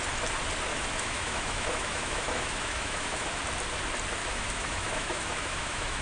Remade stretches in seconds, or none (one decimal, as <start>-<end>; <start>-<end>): 0.7-3.4; 4.2-6.0